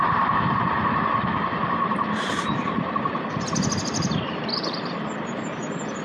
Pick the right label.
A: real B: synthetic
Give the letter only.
B